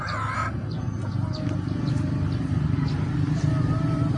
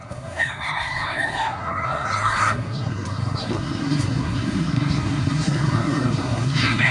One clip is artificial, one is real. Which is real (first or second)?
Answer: first